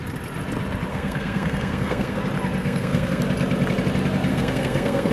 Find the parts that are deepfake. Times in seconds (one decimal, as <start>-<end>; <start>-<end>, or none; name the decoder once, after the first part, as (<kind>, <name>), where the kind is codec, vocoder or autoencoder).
0.9-2.2 (codec, SNAC); 2.6-3.2; 4.3-5.1

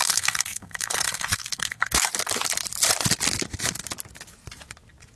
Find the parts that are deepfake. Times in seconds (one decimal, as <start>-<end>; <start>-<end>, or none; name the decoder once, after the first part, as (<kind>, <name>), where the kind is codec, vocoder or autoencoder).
0.0-2.1 (codec, SNAC)

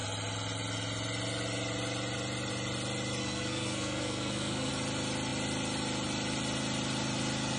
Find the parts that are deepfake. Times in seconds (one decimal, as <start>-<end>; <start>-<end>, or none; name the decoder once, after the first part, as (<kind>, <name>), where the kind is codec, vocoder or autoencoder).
3.2-4.7 (codec, SNAC)